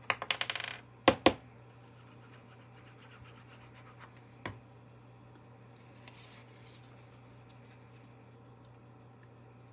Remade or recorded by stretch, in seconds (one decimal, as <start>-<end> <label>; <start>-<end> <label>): 0.0-9.7 recorded